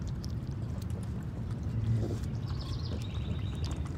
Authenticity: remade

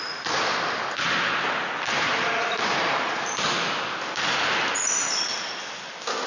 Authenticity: recorded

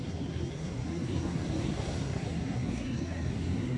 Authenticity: remade